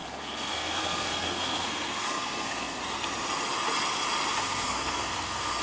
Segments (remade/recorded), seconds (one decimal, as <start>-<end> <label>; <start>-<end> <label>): 0.0-2.8 remade; 2.8-4.3 recorded; 4.3-5.6 remade